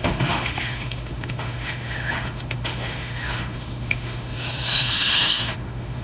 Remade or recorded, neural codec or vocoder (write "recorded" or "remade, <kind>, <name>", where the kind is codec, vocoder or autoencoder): remade, autoencoder, DAC-VAE